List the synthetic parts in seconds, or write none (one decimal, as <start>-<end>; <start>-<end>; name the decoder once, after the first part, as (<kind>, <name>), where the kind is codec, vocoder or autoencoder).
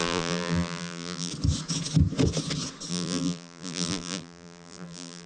0.0-1.3 (vocoder, BigVGAN v2); 2.9-5.3